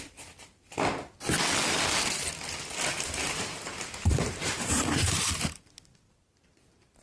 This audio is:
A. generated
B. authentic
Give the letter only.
B